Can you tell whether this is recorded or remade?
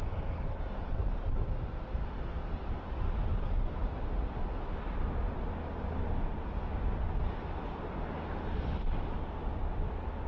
recorded